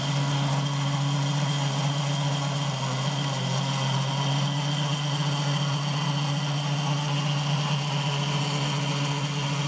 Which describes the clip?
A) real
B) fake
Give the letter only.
A